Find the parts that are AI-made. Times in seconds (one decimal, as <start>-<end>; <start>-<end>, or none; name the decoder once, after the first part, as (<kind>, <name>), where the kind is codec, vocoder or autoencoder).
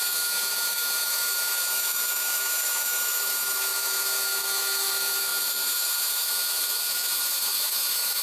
0.0-8.2 (autoencoder, DAC-VAE)